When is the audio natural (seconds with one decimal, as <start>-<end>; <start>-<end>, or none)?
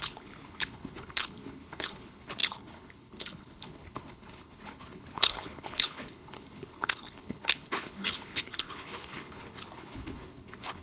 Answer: none